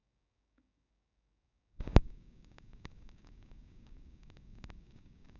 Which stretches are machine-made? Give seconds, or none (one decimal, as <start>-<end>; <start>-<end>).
0.0-5.4